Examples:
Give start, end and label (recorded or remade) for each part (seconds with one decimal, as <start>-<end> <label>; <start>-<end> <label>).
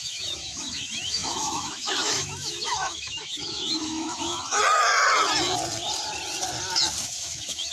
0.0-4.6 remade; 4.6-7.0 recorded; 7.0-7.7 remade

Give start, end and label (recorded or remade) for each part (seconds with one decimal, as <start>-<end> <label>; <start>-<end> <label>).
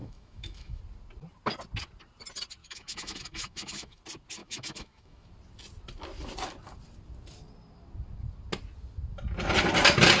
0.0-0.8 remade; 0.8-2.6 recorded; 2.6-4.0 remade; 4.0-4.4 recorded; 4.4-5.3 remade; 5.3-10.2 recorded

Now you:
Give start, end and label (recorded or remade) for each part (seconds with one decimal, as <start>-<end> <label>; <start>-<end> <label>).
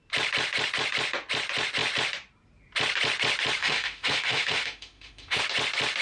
0.0-3.6 recorded; 3.6-5.4 remade; 5.4-6.0 recorded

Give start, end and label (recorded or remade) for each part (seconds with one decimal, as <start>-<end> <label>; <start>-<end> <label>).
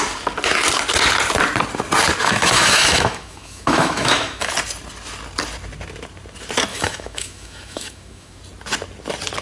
0.0-2.2 recorded; 2.2-4.5 remade; 4.5-6.7 recorded; 6.7-8.4 remade; 8.4-9.4 recorded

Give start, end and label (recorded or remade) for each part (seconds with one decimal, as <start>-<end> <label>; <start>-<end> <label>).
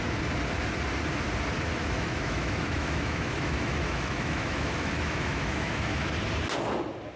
0.0-1.8 recorded; 1.8-6.1 remade; 6.1-7.2 recorded